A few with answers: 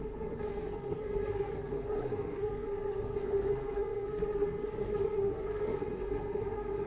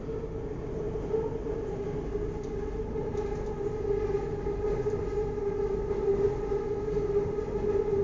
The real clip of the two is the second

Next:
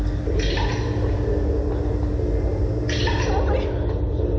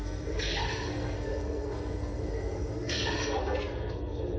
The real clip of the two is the first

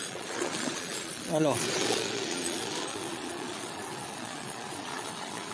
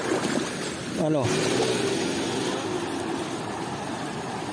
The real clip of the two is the second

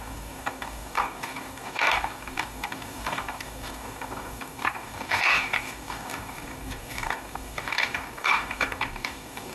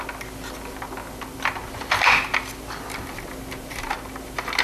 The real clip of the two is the second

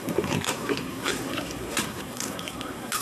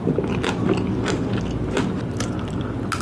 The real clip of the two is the second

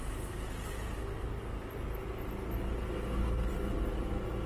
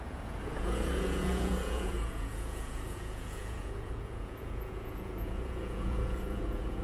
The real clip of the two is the first